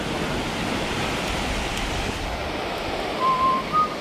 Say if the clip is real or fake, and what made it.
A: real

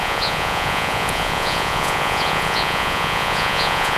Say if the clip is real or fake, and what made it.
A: fake, vocoder, Vocos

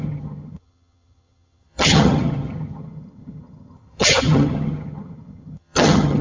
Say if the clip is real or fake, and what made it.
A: fake, vocoder, HiFi-GAN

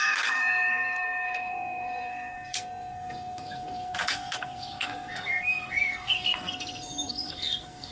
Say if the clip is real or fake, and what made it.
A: fake, codec, SNAC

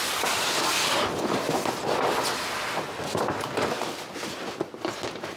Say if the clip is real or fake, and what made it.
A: real